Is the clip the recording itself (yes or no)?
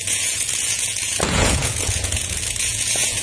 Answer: no